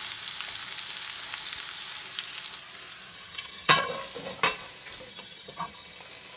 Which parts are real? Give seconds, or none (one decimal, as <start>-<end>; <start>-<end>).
0.0-3.1; 3.9-5.1; 6.0-6.4